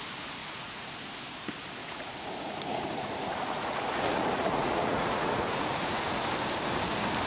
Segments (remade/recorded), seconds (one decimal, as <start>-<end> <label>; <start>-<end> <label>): 0.0-0.4 recorded; 0.4-0.9 remade; 0.9-1.8 recorded; 1.8-6.2 remade; 6.2-7.3 recorded